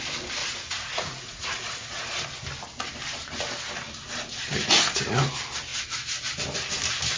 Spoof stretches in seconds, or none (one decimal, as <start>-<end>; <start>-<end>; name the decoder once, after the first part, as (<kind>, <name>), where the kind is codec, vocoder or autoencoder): 0.4-2.0 (vocoder, Vocos)